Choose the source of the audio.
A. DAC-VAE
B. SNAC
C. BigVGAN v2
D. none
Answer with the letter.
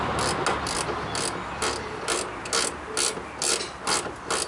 D